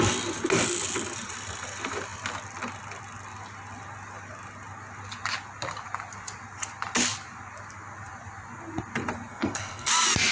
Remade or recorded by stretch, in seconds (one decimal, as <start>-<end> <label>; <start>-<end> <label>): 0.0-9.3 recorded; 9.3-9.9 remade; 9.9-10.3 recorded

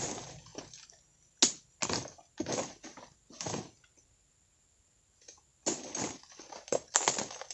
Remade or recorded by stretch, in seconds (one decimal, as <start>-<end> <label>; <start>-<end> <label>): 0.0-7.5 recorded

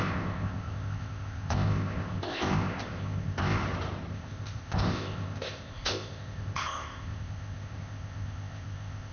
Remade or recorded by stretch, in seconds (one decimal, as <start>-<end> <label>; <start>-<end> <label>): 0.0-3.6 remade; 3.6-4.1 recorded; 4.1-9.1 remade

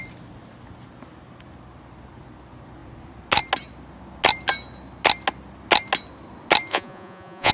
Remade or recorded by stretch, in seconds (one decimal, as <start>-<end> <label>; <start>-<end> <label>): 0.0-6.7 recorded; 6.7-7.5 remade

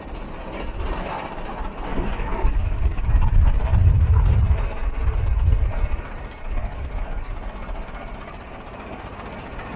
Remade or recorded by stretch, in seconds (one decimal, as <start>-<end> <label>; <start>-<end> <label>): 0.0-1.9 recorded; 1.9-3.1 remade; 3.1-6.6 recorded; 6.6-7.3 remade; 7.3-9.8 recorded

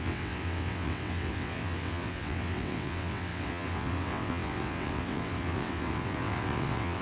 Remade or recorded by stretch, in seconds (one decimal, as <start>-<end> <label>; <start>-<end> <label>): 0.0-7.0 remade

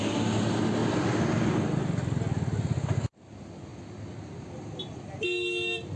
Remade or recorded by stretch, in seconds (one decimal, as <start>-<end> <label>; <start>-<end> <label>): 0.0-6.0 recorded

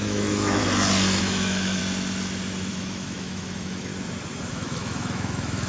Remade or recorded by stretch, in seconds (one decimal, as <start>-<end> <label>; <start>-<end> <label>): 0.0-0.6 remade; 0.6-1.2 recorded; 1.2-1.8 remade; 1.8-2.7 recorded; 2.7-3.9 remade; 3.9-4.5 recorded; 4.5-5.7 remade